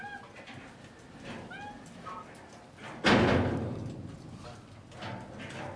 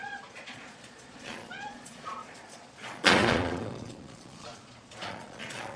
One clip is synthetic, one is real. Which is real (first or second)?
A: first